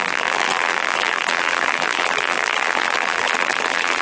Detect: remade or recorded remade